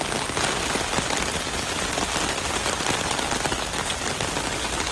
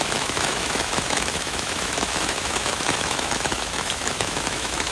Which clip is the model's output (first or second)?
second